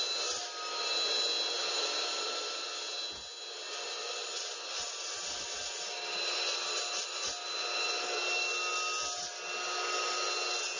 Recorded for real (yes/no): yes